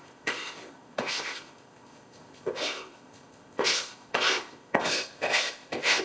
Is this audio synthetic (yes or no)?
yes